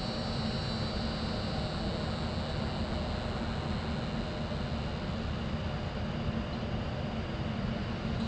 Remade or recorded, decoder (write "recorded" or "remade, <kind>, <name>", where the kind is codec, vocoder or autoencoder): recorded